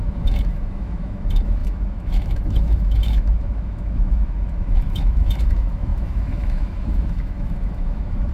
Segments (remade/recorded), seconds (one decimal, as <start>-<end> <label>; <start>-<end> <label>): 0.0-8.3 remade